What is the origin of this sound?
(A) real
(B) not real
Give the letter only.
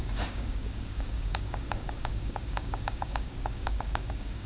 B